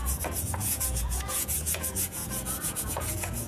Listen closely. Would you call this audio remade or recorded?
remade